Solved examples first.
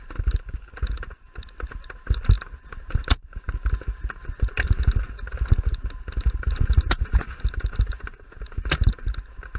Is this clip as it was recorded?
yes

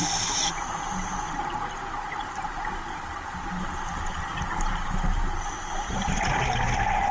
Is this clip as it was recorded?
yes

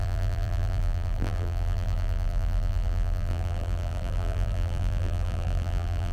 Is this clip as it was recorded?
no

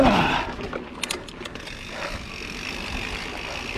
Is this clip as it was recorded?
yes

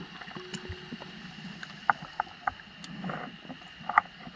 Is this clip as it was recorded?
yes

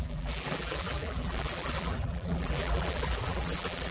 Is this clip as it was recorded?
no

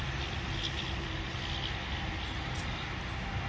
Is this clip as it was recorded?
yes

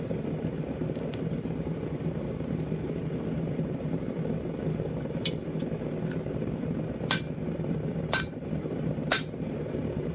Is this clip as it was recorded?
no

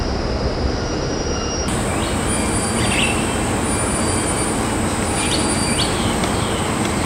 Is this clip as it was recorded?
yes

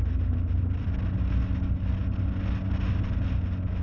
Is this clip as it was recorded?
yes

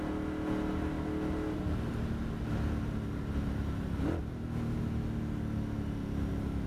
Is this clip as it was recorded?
yes